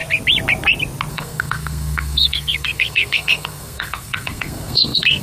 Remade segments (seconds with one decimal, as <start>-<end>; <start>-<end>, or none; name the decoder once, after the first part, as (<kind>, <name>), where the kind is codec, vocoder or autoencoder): 1.1-5.2 (codec, SNAC)